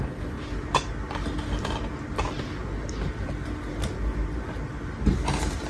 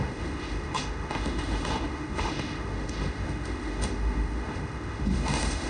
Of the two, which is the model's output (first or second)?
second